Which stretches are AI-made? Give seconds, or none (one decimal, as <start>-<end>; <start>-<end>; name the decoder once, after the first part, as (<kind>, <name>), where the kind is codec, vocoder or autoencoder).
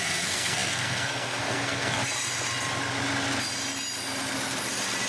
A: 0.0-2.0 (codec, SNAC)